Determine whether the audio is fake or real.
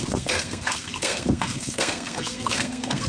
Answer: fake